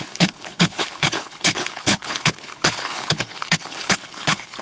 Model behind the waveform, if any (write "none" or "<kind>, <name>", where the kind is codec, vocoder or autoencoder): codec, HILCodec